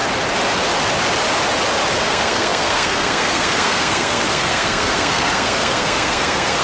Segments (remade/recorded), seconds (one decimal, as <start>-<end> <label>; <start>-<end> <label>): 0.0-2.0 recorded; 2.0-6.6 remade